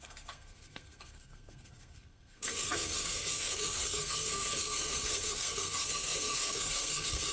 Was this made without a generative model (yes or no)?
no